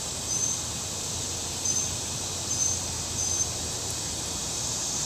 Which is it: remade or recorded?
remade